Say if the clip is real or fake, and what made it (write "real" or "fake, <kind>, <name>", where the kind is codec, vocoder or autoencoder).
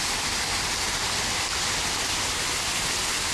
real